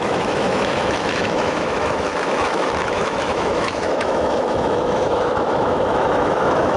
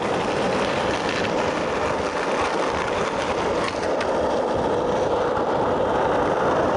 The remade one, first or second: first